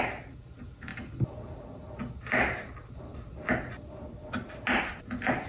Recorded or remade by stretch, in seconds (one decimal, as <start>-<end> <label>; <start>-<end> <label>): 0.0-5.5 recorded